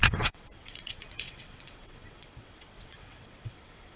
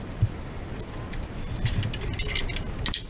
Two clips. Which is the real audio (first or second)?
second